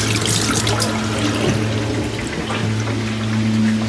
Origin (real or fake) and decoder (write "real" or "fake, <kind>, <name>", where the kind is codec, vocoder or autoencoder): real